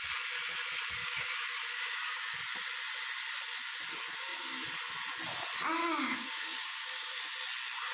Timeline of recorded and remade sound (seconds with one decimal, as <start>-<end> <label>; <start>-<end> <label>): 0.0-1.0 recorded; 1.0-2.3 remade; 2.3-5.8 recorded; 5.8-7.1 remade; 7.1-7.9 recorded